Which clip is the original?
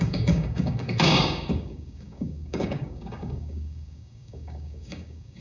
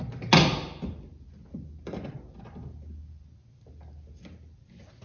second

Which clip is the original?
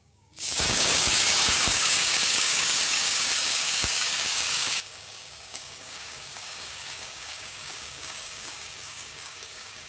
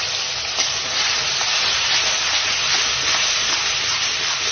second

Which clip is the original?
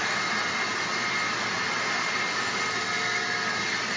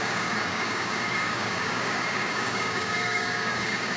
first